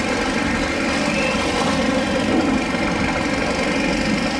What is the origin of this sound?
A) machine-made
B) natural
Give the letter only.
B